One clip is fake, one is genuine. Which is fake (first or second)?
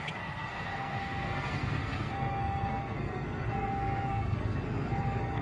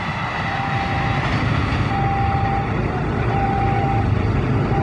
first